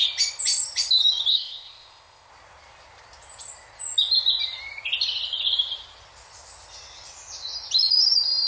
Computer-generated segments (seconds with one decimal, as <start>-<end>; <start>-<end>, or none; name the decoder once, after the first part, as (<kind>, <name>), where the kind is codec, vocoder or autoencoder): 1.3-2.3 (codec, ZipCodec)

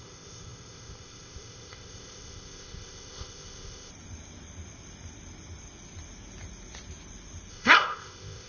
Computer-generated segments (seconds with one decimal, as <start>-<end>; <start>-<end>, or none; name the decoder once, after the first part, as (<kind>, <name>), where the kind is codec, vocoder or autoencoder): 0.0-3.9 (codec, ZipCodec); 7.5-8.5

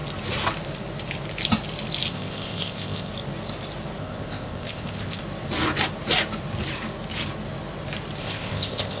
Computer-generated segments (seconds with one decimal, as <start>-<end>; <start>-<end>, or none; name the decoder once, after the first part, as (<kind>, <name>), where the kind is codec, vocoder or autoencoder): 2.1-3.1 (codec, ZipCodec); 4.0-5.2; 8.2-9.0

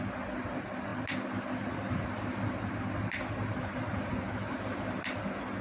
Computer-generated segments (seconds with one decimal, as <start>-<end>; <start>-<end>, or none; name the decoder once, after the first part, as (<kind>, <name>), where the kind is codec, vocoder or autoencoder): none